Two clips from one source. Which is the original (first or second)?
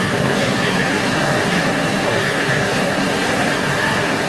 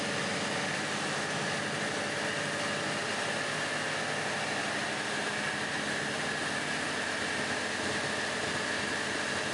second